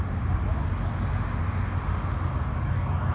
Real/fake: real